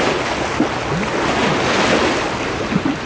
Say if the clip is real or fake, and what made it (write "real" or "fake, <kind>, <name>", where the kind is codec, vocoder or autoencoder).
real